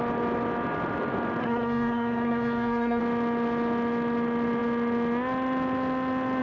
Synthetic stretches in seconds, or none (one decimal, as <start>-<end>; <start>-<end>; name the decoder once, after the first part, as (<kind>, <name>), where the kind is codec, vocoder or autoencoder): 1.4-3.0 (codec, SNAC)